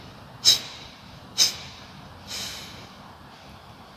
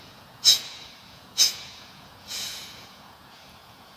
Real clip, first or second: first